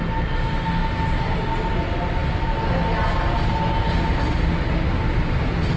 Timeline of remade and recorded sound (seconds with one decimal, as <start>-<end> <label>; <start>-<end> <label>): 0.0-5.8 recorded